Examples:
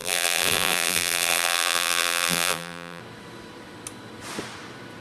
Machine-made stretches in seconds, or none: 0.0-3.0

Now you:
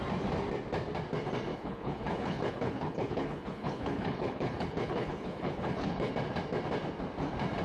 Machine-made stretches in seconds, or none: 1.5-6.1

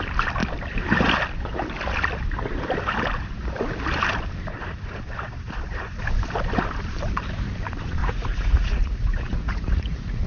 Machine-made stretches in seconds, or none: 8.0-10.3

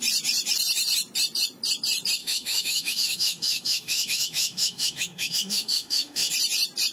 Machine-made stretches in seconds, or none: 2.2-6.3

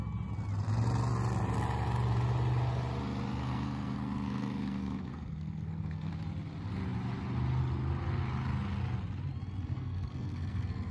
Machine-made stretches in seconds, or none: 3.4-6.1; 9.7-10.9

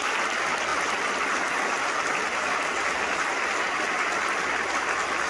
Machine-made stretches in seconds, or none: none